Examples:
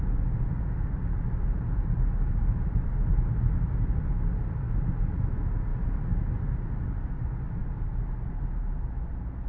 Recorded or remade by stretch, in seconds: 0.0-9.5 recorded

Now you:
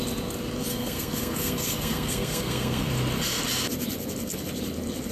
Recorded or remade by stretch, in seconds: 0.0-0.7 recorded; 0.7-2.9 remade; 2.9-5.1 recorded

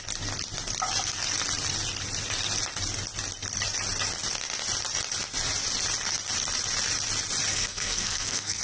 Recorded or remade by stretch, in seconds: 0.0-7.5 recorded; 7.5-8.6 remade

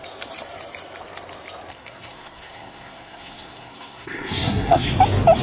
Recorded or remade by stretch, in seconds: 0.0-1.7 recorded; 1.7-4.9 remade; 4.9-5.4 recorded

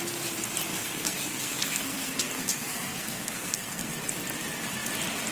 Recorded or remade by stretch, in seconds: 0.0-0.7 recorded; 0.7-3.9 remade; 3.9-5.3 recorded

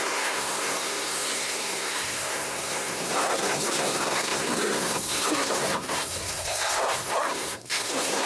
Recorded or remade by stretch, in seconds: 0.0-8.3 remade

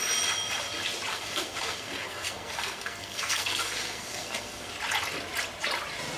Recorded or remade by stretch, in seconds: 0.0-1.1 recorded; 1.1-4.7 remade; 4.7-6.2 recorded